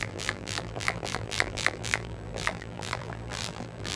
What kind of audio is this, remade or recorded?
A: remade